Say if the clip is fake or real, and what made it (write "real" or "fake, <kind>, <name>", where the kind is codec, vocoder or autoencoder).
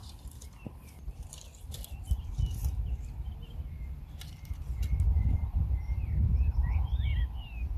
fake, vocoder, BigVGAN v2